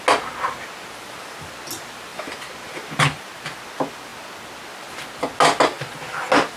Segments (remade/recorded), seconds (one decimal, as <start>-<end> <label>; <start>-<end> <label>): 0.0-2.1 recorded; 2.1-3.2 remade; 3.2-6.6 recorded